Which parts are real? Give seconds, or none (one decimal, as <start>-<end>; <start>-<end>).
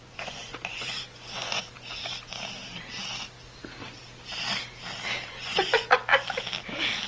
2.0-5.3; 6.1-7.1